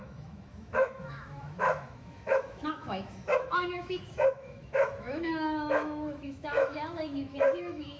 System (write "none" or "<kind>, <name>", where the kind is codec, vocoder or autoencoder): autoencoder, DAC-VAE